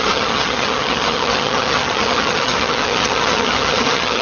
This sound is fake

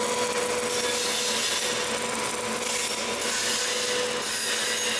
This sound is real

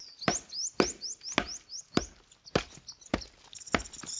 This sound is real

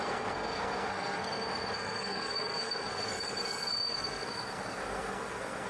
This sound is fake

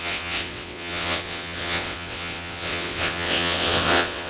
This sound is fake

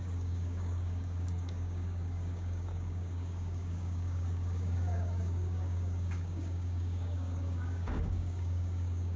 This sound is fake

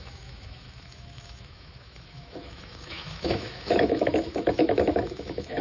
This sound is fake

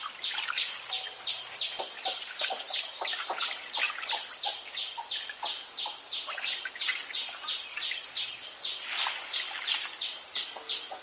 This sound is real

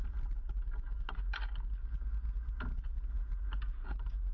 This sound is real